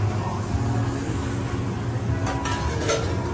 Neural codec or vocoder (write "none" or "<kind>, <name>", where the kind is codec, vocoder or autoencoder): none